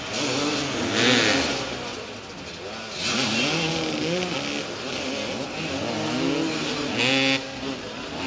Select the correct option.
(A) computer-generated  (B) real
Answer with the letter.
B